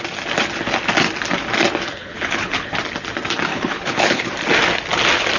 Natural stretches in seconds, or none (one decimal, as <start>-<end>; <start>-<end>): 0.0-2.0; 2.7-3.5; 4.3-5.4